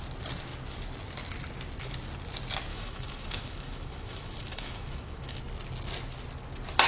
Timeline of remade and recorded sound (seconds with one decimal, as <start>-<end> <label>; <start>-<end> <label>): 0.0-2.7 recorded; 2.7-5.4 remade; 5.4-6.9 recorded